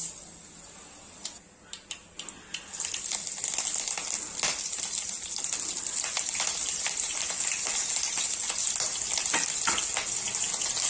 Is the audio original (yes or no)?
yes